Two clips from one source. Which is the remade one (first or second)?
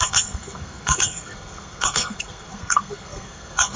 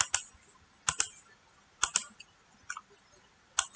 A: first